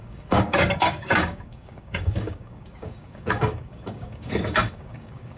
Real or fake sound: fake